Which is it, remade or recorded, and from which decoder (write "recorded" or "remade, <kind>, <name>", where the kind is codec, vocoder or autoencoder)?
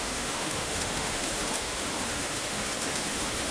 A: remade, autoencoder, DAC-VAE